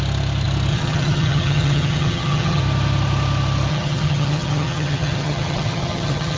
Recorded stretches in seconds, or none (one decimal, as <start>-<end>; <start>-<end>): 0.0-0.7; 2.6-3.7